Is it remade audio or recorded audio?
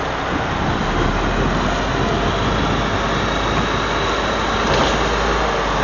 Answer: recorded